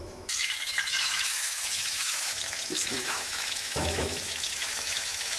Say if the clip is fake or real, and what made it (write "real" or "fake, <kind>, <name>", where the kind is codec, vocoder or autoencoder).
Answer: fake, autoencoder, DAC-VAE